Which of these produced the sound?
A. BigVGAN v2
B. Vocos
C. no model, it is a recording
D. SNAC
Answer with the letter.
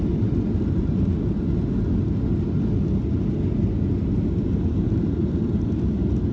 C